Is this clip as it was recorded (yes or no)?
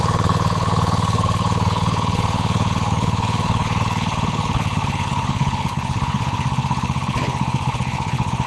no